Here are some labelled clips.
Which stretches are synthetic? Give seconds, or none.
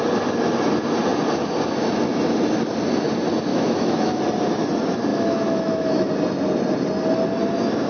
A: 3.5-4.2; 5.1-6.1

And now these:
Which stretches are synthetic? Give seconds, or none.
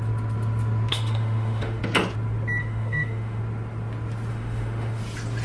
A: 0.9-1.8; 2.6-3.4; 4.3-5.0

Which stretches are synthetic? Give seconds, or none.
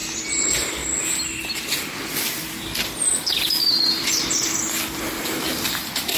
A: 0.0-0.7; 3.6-4.7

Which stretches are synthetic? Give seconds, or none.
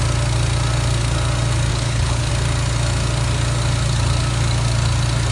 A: 1.7-2.3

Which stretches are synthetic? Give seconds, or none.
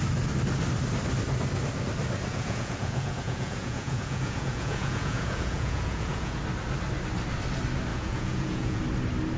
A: 2.3-6.4; 7.9-8.8